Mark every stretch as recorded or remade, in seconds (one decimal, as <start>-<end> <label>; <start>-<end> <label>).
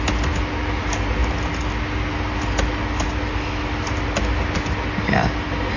0.0-5.8 recorded